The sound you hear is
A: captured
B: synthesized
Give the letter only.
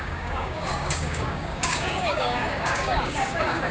B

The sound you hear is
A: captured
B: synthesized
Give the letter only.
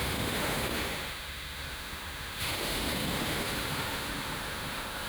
B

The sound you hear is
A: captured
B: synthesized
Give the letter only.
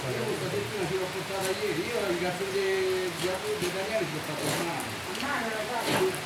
A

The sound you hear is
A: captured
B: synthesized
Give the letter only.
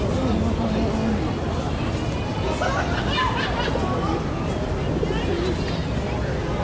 A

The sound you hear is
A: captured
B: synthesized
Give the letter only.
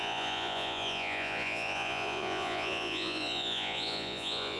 B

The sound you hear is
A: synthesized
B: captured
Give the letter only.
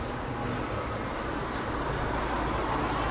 B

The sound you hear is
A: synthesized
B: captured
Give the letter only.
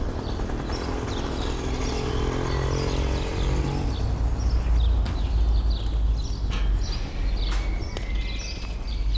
B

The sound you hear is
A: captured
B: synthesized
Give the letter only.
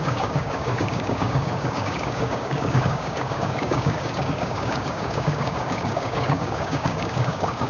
B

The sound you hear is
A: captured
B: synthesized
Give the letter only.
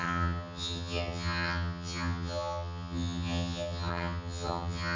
B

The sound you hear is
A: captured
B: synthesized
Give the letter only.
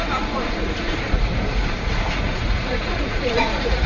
B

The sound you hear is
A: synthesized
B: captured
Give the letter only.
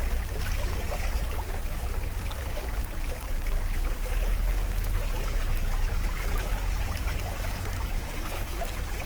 A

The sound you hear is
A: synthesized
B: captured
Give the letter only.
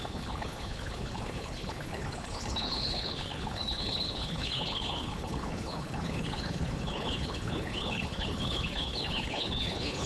A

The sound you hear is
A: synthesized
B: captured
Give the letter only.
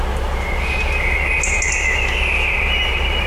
B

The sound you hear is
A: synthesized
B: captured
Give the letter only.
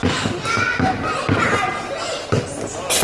B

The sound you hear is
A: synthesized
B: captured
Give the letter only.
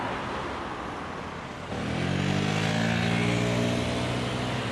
B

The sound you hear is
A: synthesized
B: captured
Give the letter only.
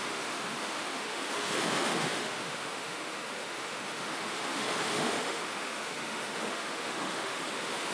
A